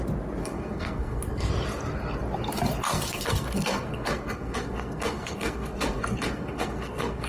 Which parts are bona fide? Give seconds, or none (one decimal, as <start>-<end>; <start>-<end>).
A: 0.0-0.4; 1.5-2.9